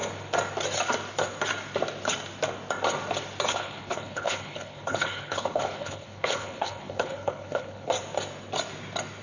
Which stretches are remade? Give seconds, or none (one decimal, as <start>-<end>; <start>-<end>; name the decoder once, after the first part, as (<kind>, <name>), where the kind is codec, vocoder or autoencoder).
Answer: 3.5-7.9 (codec, HILCodec)